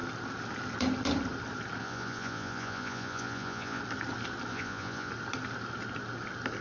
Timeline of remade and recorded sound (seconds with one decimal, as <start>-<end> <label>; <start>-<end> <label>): 0.0-1.8 recorded; 1.8-3.8 remade; 3.8-4.5 recorded; 4.5-5.1 remade; 5.1-6.6 recorded